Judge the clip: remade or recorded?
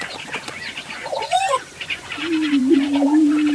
remade